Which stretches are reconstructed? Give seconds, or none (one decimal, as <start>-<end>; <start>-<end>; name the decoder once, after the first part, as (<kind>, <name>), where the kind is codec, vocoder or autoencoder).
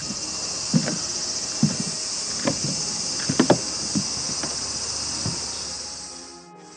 none